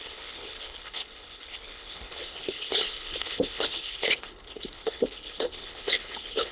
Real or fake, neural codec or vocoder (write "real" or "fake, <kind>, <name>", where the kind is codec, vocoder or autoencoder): fake, codec, HILCodec